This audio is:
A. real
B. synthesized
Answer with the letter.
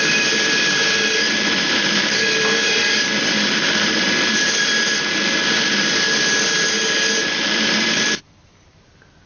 B